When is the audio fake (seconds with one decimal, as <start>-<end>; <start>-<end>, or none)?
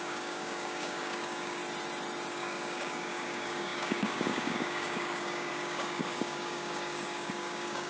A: 0.0-1.6; 2.3-7.9